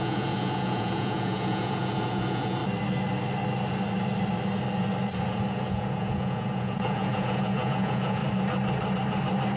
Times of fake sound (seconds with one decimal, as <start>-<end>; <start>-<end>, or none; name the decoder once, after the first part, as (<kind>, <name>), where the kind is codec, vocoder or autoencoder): 0.0-2.6 (vocoder, Vocos); 5.5-8.2